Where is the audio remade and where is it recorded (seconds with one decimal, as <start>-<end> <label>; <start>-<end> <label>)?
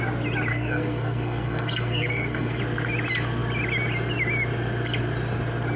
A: 0.0-0.5 recorded; 0.5-2.6 remade; 2.6-5.8 recorded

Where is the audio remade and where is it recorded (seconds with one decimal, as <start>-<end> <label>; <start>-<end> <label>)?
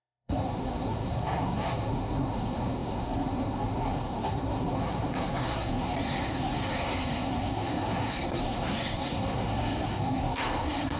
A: 0.0-11.0 remade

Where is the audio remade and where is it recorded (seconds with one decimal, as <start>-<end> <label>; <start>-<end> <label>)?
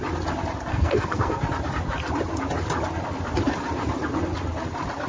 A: 0.0-0.7 recorded; 0.7-1.4 remade; 1.4-5.1 recorded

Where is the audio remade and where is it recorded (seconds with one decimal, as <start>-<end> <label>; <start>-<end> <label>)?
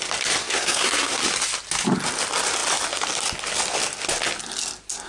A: 0.0-0.4 recorded; 0.4-1.2 remade; 1.2-5.1 recorded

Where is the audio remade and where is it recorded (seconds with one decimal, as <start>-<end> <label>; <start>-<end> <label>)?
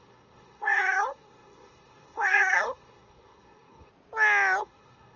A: 0.0-3.9 remade; 3.9-4.6 recorded; 4.6-5.2 remade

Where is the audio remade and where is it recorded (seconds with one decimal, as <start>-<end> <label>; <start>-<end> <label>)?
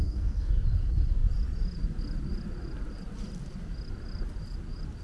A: 0.0-0.5 remade; 0.5-5.0 recorded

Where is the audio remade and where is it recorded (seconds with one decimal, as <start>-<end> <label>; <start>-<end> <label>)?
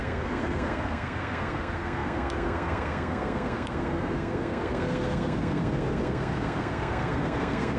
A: 0.0-7.8 remade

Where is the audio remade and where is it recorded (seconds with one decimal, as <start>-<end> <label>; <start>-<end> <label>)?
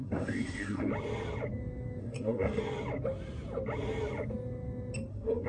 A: 0.0-0.9 remade; 0.9-2.0 recorded; 2.0-2.6 remade; 2.6-5.1 recorded; 5.1-5.5 remade